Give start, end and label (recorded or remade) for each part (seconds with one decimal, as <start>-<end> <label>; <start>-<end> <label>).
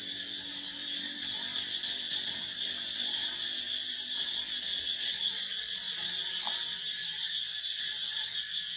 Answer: 0.0-4.7 recorded; 4.7-6.1 remade; 6.1-8.8 recorded